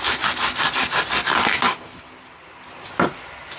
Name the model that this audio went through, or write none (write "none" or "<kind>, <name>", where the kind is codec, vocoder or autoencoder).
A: none